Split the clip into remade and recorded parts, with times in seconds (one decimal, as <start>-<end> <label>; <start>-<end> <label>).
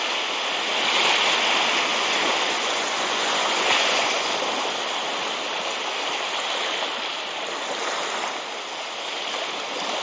0.0-1.9 recorded; 1.9-4.3 remade; 4.3-10.0 recorded